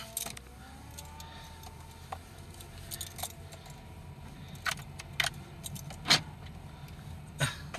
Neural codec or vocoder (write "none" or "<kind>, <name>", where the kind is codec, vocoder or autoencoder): none